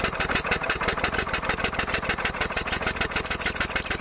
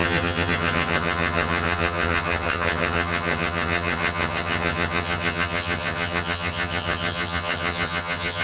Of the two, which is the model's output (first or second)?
second